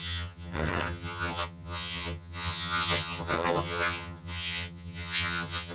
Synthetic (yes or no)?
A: yes